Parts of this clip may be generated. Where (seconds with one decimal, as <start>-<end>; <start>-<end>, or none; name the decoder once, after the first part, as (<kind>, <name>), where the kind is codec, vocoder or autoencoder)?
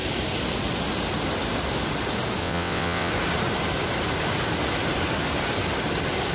2.4-3.1 (vocoder, WaveNeXt)